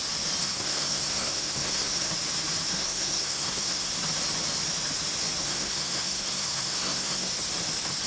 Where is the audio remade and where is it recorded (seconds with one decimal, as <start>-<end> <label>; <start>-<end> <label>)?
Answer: 0.0-0.4 recorded; 0.4-2.1 remade; 2.1-2.7 recorded; 2.7-3.9 remade; 3.9-5.4 recorded; 5.4-7.3 remade; 7.3-8.1 recorded